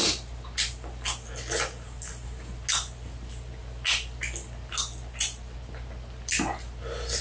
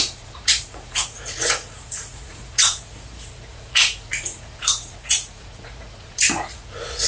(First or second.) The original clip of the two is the first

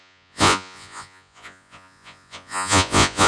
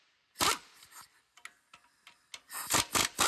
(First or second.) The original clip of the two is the second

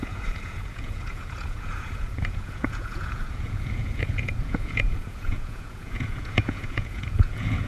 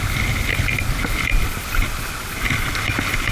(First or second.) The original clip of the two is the second